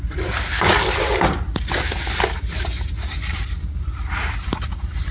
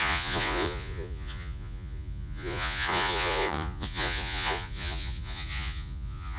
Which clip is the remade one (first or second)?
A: second